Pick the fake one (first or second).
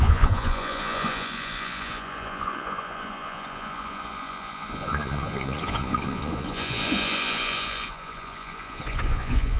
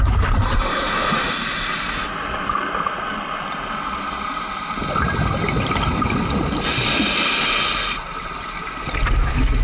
first